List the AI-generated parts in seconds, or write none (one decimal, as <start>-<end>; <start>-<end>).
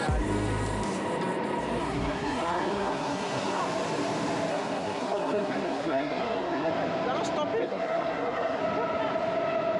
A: 1.8-3.6; 4.5-6.7; 7.6-8.6